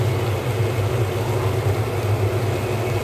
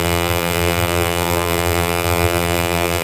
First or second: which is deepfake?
second